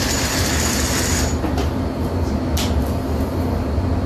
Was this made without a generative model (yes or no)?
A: yes